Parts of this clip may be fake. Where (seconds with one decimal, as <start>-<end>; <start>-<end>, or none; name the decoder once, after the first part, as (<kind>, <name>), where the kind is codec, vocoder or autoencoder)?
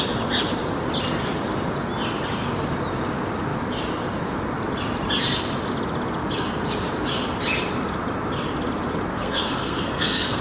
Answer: 9.1-10.4 (codec, SNAC)